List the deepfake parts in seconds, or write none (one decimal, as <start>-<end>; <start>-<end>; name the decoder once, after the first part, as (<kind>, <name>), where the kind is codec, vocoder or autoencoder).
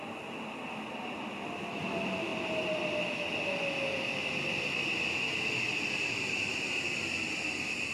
none